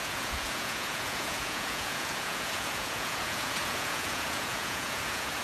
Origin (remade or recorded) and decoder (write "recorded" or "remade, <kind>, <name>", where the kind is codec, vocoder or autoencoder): remade, vocoder, Vocos